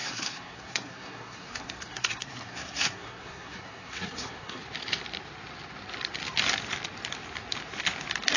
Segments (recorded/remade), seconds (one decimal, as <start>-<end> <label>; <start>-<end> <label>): 0.0-4.6 remade; 4.6-8.4 recorded